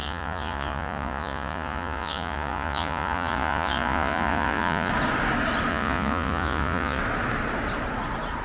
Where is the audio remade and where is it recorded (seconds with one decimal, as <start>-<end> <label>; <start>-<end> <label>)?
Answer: 0.0-4.9 remade; 4.9-5.7 recorded; 5.7-7.0 remade; 7.0-8.4 recorded